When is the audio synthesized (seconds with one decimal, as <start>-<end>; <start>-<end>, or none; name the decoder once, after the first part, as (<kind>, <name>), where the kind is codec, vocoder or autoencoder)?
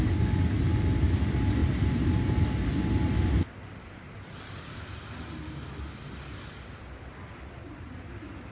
7.6-8.1 (vocoder, Vocos)